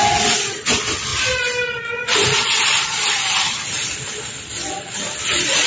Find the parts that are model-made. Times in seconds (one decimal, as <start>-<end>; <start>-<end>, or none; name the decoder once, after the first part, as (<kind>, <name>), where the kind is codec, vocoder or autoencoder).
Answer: none